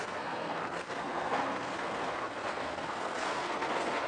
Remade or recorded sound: remade